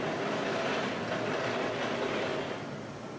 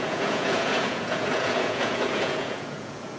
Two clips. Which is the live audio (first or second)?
first